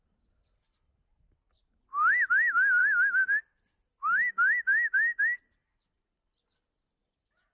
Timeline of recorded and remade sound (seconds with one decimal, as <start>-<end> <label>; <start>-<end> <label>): 0.0-7.5 recorded